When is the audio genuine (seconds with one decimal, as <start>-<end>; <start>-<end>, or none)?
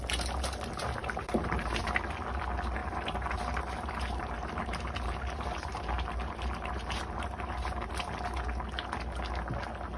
0.0-1.0; 1.8-2.8; 7.9-10.0